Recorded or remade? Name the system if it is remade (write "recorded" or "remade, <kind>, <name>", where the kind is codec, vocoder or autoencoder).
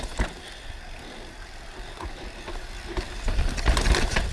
recorded